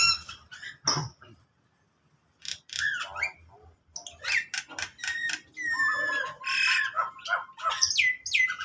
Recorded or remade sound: recorded